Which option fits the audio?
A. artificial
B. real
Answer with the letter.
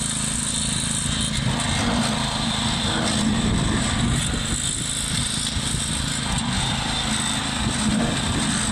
B